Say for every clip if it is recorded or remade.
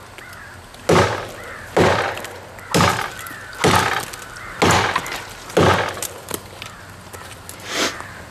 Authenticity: recorded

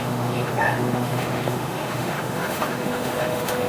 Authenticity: remade